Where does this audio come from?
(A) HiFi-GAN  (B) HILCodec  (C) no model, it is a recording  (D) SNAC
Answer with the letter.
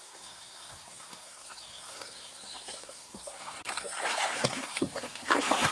D